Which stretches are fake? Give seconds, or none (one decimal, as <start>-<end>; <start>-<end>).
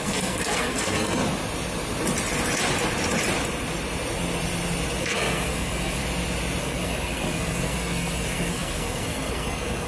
0.0-1.2; 5.0-6.0; 6.6-9.9